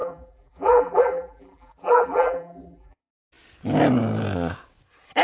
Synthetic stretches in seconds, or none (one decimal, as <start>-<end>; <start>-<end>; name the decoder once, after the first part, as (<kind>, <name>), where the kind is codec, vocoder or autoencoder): 0.0-3.1 (vocoder, BigVGAN v2)